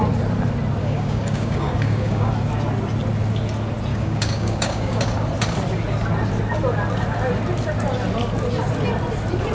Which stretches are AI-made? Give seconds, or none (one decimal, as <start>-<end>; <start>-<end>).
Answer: 0.8-2.3; 3.9-5.0